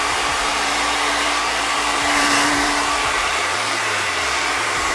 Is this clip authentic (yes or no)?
no